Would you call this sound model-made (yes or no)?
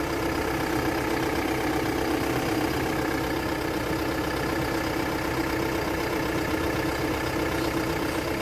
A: no